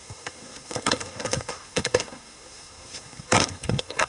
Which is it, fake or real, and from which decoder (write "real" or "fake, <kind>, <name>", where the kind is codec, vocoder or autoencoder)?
fake, codec, SNAC